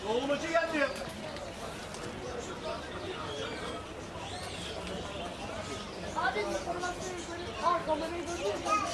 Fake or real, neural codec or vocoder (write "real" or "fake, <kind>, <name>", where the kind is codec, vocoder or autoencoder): real